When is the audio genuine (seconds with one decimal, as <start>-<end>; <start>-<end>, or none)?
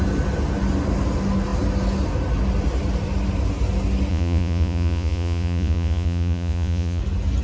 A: 0.0-4.1; 7.0-7.4